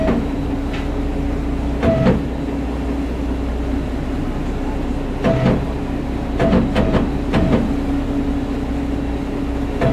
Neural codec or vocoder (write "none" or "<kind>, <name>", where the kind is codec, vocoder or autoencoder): none